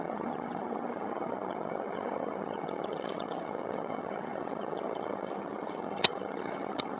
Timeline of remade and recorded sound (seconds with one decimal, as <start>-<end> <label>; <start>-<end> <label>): 0.0-7.0 remade